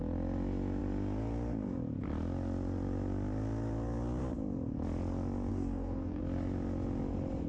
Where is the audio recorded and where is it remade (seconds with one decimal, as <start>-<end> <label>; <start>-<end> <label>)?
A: 0.0-5.5 recorded; 5.5-6.2 remade; 6.2-7.5 recorded